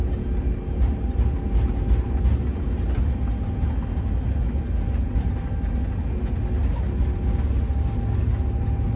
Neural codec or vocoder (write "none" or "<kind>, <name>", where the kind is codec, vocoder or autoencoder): none